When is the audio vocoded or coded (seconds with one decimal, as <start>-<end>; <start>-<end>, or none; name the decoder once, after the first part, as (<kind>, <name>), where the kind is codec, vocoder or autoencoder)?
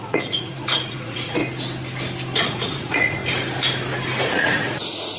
0.0-1.4 (vocoder, Vocos); 2.4-3.2; 4.3-5.2